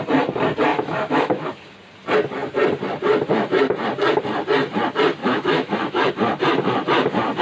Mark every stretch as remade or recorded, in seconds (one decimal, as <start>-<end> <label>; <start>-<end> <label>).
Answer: 0.0-0.7 recorded; 0.7-1.5 remade; 1.5-5.2 recorded; 5.2-6.1 remade; 6.1-7.4 recorded

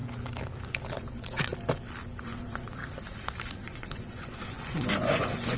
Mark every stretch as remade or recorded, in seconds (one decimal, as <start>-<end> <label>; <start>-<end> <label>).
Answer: 0.0-1.0 recorded; 1.0-1.5 remade; 1.5-2.2 recorded; 2.2-2.8 remade; 2.8-3.5 recorded; 3.5-5.6 remade

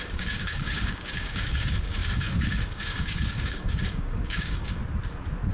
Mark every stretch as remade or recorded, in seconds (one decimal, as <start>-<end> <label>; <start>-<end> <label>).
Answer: 0.0-4.8 remade; 4.8-5.5 recorded

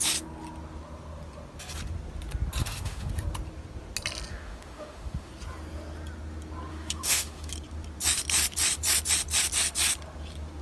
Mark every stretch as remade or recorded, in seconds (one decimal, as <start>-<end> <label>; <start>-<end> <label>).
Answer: 0.0-2.6 recorded; 2.6-3.1 remade; 3.1-4.3 recorded; 4.3-5.3 remade; 5.3-6.7 recorded; 6.7-7.5 remade; 7.5-10.6 recorded

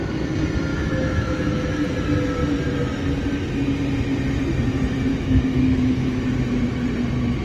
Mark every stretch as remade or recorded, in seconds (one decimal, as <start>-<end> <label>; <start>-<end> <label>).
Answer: 0.0-0.7 recorded; 0.7-1.7 remade; 1.7-5.1 recorded; 5.1-6.2 remade; 6.2-7.4 recorded

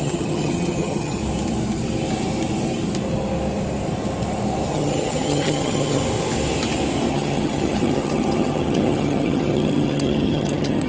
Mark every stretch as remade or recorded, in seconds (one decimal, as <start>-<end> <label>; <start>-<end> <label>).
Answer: 0.0-1.2 remade; 1.2-4.7 recorded; 4.7-6.0 remade; 6.0-7.1 recorded; 7.1-10.9 remade

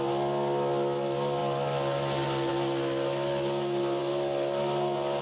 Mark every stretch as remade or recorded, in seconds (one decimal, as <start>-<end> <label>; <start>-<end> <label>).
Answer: 0.0-5.2 recorded